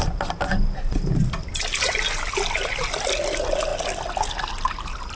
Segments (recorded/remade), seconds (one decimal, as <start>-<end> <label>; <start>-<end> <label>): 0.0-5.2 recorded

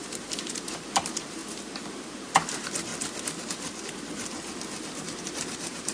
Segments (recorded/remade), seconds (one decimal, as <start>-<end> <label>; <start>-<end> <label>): 0.0-1.4 remade; 1.4-1.9 recorded; 1.9-2.9 remade; 2.9-5.2 recorded; 5.2-5.9 remade

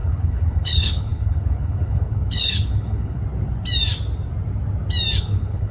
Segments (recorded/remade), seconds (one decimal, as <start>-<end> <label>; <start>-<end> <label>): 0.0-3.2 remade; 3.2-5.2 recorded; 5.2-5.7 remade

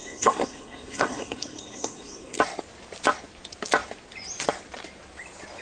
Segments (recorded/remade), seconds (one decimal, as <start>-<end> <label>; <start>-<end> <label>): 0.0-2.4 remade; 2.4-5.6 recorded

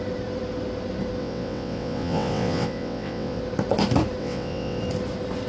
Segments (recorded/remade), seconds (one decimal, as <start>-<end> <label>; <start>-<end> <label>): 0.0-1.2 recorded; 1.2-3.4 remade; 3.4-4.2 recorded; 4.2-4.8 remade; 4.8-5.5 recorded

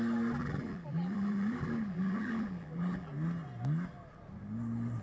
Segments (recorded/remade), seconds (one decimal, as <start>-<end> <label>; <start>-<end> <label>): 0.0-0.4 recorded; 0.4-3.1 remade; 3.1-5.0 recorded